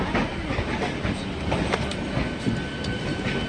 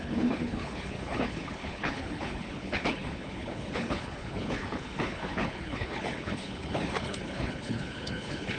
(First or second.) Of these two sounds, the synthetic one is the second